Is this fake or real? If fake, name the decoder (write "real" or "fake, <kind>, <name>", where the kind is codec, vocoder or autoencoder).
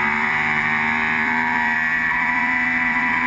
fake, vocoder, BigVGAN v2